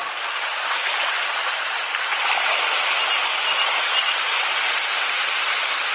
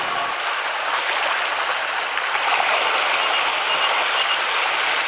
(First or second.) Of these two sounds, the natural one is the second